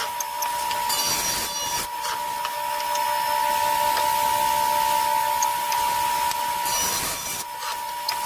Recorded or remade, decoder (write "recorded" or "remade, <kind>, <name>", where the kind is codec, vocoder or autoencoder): recorded